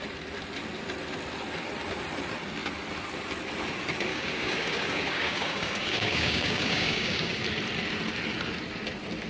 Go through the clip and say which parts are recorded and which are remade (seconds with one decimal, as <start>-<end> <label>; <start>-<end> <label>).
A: 0.0-4.1 recorded; 4.1-7.4 remade; 7.4-9.3 recorded